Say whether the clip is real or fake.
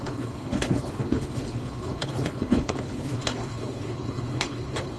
fake